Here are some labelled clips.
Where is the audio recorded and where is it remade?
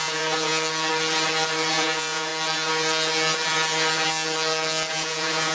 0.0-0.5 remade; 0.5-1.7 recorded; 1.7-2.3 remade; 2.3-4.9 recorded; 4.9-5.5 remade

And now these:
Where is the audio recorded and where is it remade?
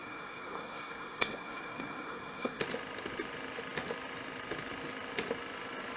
0.0-2.6 remade; 2.6-6.0 recorded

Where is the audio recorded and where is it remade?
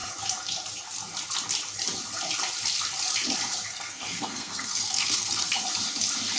0.0-3.7 recorded; 3.7-5.5 remade; 5.5-6.4 recorded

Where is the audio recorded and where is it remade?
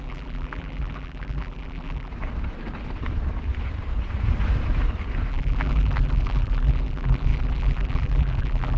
0.0-2.1 remade; 2.1-5.3 recorded; 5.3-8.8 remade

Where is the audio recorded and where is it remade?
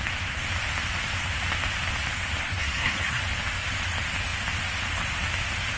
0.0-2.4 recorded; 2.4-3.2 remade; 3.2-5.8 recorded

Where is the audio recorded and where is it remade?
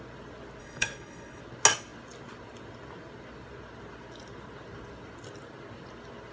0.0-0.6 recorded; 0.6-1.4 remade; 1.4-6.3 recorded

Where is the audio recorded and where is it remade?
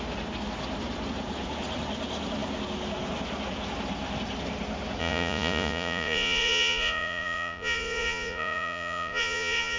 0.0-5.0 recorded; 5.0-9.8 remade